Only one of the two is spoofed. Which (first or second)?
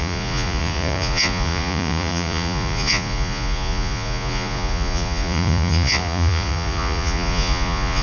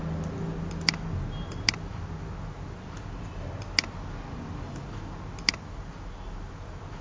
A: first